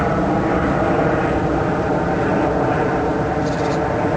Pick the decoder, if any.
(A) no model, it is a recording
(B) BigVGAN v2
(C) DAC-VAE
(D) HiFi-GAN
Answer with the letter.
B